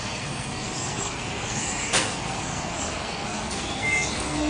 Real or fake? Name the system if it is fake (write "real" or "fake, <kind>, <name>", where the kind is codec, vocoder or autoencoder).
fake, codec, SNAC